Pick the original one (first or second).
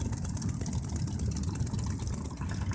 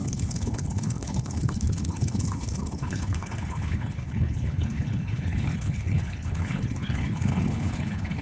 first